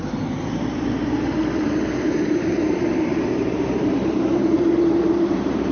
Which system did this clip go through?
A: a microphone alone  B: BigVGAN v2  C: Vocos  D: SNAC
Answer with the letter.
B